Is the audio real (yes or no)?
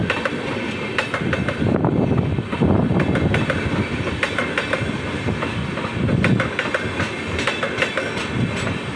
yes